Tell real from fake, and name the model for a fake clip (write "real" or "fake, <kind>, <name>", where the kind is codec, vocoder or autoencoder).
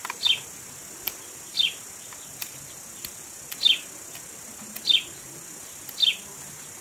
real